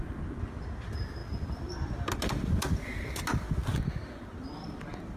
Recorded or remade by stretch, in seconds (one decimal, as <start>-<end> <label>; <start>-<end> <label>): 0.0-5.2 recorded